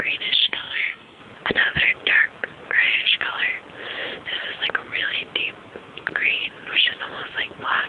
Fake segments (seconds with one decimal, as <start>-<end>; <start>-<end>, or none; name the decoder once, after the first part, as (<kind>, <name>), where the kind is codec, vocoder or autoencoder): 0.4-1.2 (codec, SNAC)